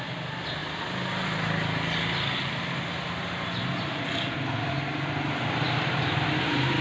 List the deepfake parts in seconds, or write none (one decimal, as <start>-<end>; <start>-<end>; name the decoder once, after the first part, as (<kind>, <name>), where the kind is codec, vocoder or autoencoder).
none